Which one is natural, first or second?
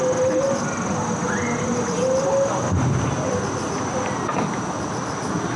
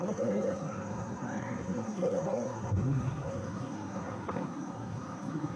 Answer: first